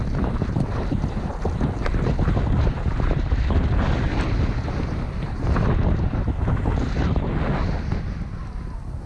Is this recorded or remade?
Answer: recorded